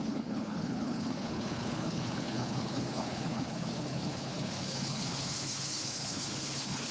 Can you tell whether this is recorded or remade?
remade